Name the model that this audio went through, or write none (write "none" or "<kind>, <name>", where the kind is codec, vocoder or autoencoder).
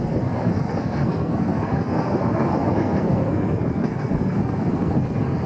codec, SNAC